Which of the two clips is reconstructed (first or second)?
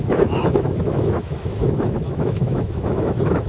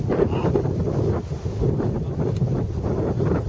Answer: first